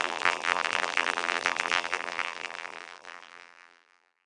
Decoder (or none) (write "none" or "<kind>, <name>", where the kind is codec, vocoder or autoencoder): vocoder, BigVGAN v2